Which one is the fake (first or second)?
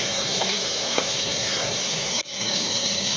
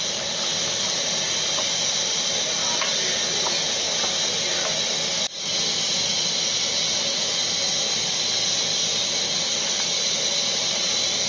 first